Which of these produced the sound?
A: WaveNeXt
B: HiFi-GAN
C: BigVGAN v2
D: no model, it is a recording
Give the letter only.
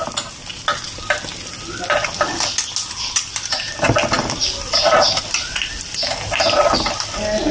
D